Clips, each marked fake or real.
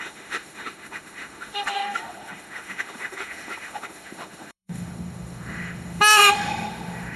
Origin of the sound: fake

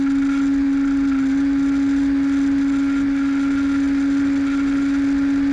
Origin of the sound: real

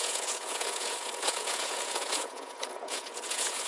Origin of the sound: fake